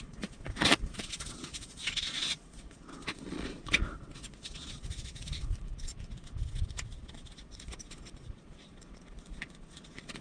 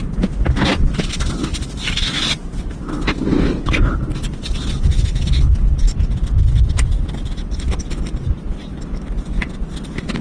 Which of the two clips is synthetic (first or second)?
first